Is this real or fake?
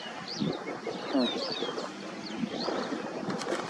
real